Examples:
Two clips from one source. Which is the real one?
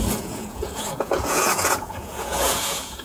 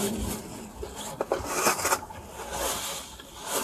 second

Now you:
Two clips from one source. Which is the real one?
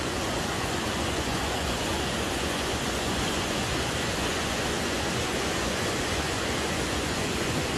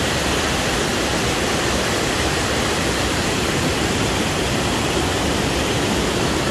second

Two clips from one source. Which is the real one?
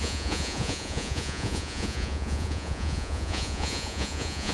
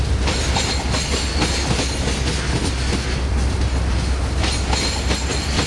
second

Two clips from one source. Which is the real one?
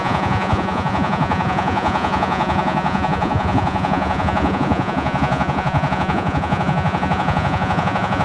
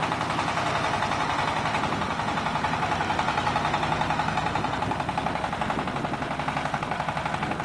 second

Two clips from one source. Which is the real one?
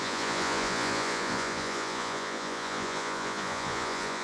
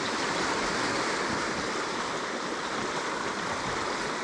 second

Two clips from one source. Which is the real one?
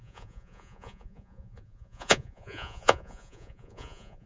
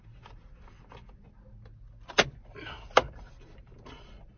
second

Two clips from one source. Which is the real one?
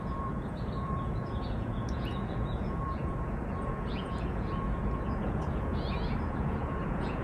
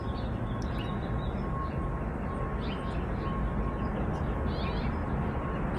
second